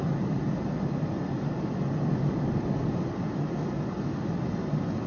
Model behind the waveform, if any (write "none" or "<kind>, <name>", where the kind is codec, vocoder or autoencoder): none